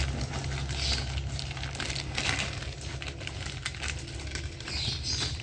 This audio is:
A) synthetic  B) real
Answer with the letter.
B